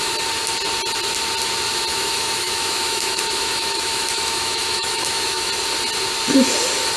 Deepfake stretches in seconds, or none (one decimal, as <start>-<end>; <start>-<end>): 1.9-5.5